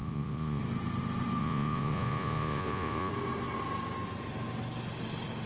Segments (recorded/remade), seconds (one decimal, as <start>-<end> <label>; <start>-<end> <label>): 0.0-0.6 remade; 0.6-1.4 recorded; 1.4-3.1 remade; 3.1-5.5 recorded